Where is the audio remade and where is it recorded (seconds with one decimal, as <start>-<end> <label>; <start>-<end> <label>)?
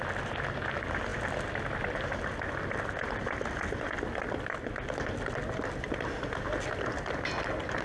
0.0-7.8 recorded